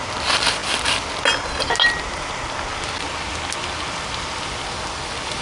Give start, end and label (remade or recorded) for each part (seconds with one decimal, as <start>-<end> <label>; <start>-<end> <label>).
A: 0.0-5.4 recorded